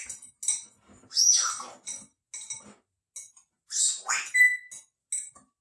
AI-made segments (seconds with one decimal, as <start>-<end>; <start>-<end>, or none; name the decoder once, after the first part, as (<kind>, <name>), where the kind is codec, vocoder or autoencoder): none